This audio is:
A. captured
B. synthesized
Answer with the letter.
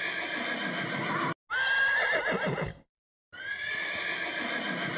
A